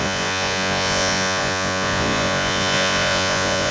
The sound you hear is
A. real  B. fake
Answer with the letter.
B